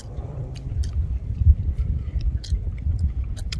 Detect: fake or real fake